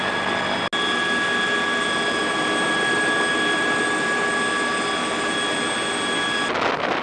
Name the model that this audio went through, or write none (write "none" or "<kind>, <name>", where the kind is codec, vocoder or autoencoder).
none